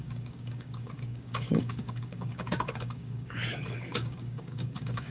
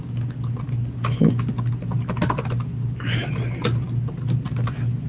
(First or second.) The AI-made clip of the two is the first